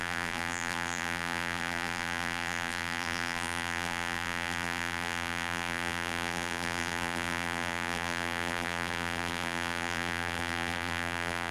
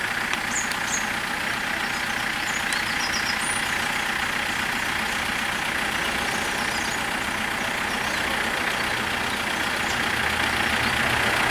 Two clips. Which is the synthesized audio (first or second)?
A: first